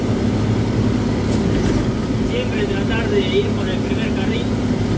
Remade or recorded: recorded